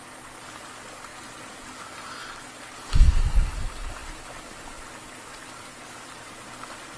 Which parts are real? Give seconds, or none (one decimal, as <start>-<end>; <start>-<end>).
0.0-7.0